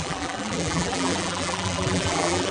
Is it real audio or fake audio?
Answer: fake